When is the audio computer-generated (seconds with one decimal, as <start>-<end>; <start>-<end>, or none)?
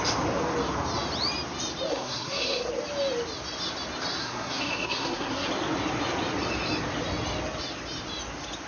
1.9-2.7; 4.2-5.5